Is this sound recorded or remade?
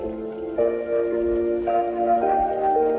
recorded